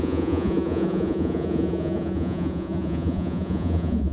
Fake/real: fake